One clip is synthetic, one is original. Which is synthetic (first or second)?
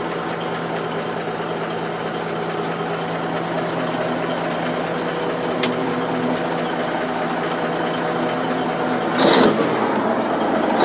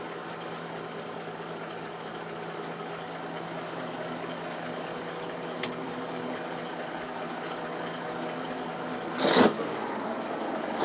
second